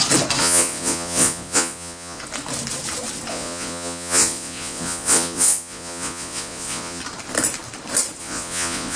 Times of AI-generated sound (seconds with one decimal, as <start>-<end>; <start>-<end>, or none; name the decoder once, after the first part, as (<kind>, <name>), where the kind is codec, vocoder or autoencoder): 0.4-2.2 (vocoder, Vocos); 3.3-7.0; 8.2-9.0